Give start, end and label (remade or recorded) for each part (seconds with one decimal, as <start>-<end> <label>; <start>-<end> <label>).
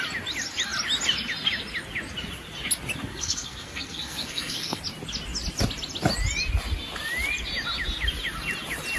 0.0-3.1 recorded; 3.1-4.8 remade; 4.8-9.0 recorded